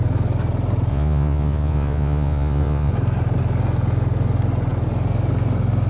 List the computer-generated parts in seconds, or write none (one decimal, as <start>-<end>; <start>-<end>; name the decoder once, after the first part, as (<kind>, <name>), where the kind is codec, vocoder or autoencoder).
0.9-2.9 (vocoder, Vocos)